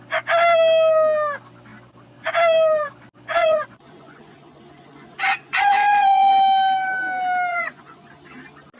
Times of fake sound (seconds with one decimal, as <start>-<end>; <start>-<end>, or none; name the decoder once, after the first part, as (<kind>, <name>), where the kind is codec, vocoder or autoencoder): 3.4-6.3 (vocoder, Vocos); 7.5-8.1

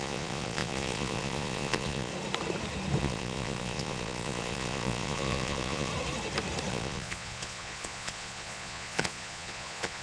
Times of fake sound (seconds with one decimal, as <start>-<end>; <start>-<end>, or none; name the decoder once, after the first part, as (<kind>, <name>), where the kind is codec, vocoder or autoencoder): 0.0-2.1 (vocoder, Vocos); 3.0-5.9; 6.7-10.0

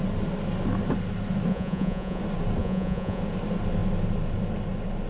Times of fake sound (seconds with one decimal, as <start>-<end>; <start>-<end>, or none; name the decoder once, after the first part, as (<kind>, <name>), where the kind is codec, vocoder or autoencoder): 1.5-2.2 (vocoder, Vocos); 2.6-3.2

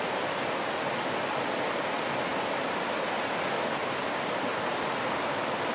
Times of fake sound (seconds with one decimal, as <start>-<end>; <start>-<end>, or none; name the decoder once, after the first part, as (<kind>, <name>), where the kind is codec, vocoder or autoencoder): none

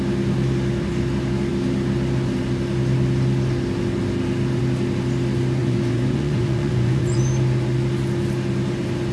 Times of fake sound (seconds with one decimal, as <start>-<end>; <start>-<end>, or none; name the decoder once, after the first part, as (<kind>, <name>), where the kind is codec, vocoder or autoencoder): 5.6-7.2 (vocoder, Vocos)

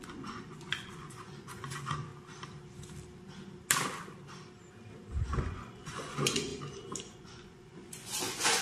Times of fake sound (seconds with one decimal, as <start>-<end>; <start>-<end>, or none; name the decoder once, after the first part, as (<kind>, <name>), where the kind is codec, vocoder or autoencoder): 0.0-2.1 (vocoder, Vocos); 5.1-6.5; 7.0-8.6

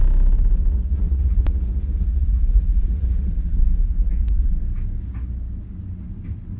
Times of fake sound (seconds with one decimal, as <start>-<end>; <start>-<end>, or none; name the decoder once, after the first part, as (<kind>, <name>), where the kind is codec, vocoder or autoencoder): 0.6-4.6 (vocoder, Vocos)